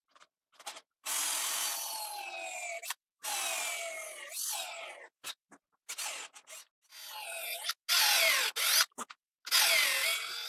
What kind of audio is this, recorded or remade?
recorded